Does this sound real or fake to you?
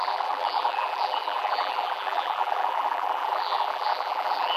fake